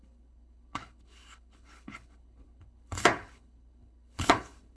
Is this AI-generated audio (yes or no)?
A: yes